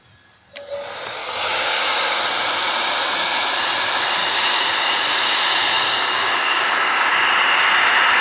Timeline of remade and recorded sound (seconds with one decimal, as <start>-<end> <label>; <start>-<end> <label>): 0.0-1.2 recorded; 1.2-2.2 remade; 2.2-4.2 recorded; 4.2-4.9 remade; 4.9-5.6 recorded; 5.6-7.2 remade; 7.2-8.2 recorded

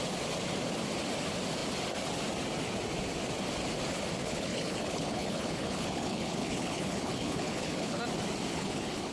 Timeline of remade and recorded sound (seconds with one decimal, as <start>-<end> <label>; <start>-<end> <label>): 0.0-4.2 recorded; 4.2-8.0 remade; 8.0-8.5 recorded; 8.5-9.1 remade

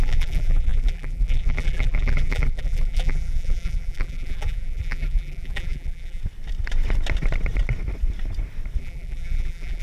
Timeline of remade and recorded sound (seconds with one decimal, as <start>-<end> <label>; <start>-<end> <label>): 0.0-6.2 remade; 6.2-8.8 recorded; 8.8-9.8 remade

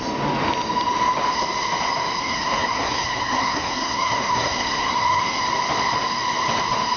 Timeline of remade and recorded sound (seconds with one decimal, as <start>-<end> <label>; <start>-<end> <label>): 0.0-2.2 recorded; 2.2-5.4 remade; 5.4-7.0 recorded

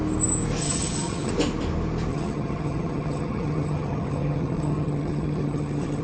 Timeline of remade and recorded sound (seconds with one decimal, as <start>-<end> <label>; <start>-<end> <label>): 0.0-0.6 recorded; 0.6-1.3 remade; 1.3-2.1 recorded; 2.1-6.0 remade

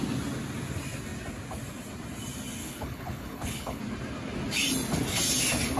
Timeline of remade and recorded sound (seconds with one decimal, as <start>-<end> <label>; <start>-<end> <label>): 0.0-2.6 recorded; 2.6-3.8 remade; 3.8-5.8 recorded

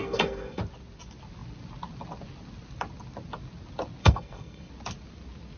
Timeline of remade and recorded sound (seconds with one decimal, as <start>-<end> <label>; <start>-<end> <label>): 0.0-0.6 remade; 0.6-4.0 recorded; 4.0-4.7 remade; 4.7-5.6 recorded

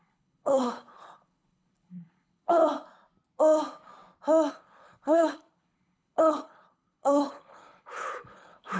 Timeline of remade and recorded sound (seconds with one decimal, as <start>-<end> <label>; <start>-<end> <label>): 0.0-2.6 remade; 2.6-4.5 recorded; 4.5-8.8 remade